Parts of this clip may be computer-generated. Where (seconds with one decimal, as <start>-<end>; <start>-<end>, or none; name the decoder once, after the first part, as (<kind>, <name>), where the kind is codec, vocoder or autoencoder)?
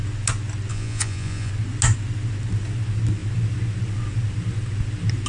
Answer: 0.7-1.5 (vocoder, Vocos)